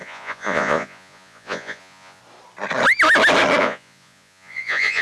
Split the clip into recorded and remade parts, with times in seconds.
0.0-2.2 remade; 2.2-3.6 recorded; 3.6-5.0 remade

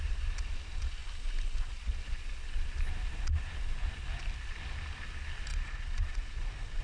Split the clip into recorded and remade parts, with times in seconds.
0.0-5.5 recorded; 5.5-6.8 remade

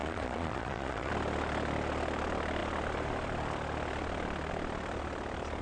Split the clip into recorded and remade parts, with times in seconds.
0.0-1.1 remade; 1.1-5.6 recorded